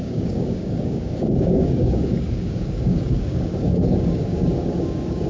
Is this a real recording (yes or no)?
no